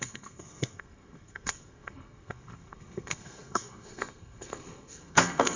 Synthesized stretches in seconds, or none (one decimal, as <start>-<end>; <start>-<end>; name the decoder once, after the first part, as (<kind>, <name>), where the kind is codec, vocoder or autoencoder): 0.0-5.6 (codec, SNAC)